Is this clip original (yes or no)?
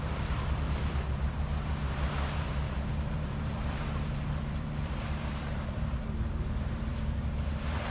no